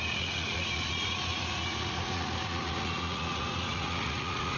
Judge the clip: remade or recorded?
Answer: remade